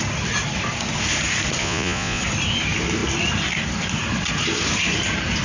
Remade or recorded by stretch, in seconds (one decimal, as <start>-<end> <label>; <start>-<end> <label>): 0.0-1.6 recorded; 1.6-2.2 remade; 2.2-5.4 recorded